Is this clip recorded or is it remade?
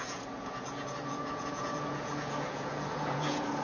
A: remade